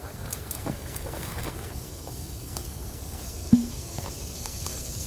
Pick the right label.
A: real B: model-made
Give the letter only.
B